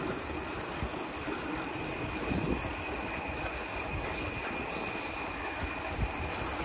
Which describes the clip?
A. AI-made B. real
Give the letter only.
B